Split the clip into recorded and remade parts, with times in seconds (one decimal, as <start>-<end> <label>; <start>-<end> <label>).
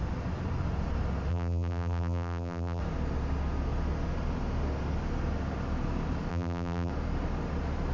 0.0-1.3 recorded; 1.3-2.8 remade; 2.8-6.3 recorded; 6.3-6.9 remade; 6.9-7.9 recorded